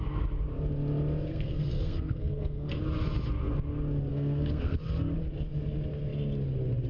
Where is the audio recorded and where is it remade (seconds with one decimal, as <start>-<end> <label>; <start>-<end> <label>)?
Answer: 0.0-1.3 recorded; 1.3-2.8 remade; 2.8-4.1 recorded; 4.1-4.8 remade; 4.8-6.9 recorded